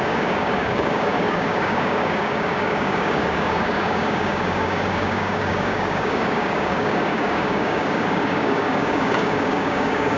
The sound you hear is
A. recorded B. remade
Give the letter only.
B